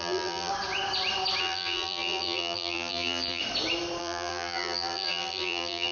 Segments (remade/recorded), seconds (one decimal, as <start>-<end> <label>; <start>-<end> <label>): 0.0-0.5 remade; 0.5-1.4 recorded; 1.4-3.4 remade; 3.4-4.0 recorded; 4.0-5.9 remade